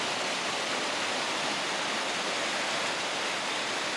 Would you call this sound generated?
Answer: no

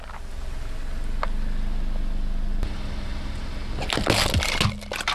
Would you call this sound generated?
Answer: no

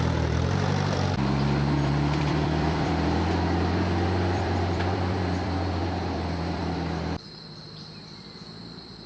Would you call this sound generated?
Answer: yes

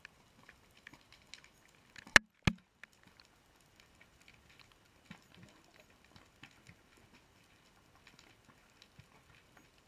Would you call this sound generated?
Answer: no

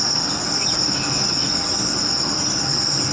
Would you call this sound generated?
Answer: no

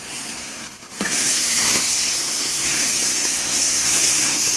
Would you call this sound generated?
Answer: yes